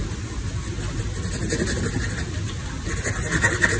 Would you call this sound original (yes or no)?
yes